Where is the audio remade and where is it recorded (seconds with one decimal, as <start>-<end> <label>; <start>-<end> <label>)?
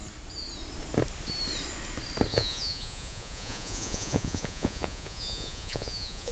0.0-2.3 recorded; 2.3-6.3 remade